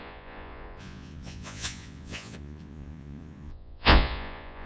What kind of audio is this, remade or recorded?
remade